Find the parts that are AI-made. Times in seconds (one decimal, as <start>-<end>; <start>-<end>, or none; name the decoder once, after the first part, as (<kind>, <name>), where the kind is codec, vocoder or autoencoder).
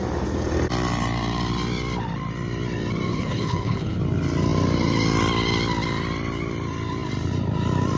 3.1-4.0 (codec, HILCodec)